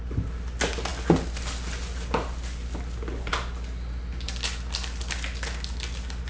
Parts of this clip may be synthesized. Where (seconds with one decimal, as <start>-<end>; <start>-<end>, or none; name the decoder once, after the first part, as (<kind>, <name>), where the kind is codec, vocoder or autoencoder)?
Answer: none